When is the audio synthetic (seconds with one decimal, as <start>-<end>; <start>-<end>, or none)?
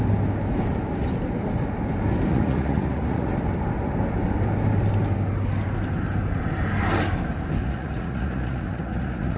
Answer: 2.3-3.3; 7.6-9.4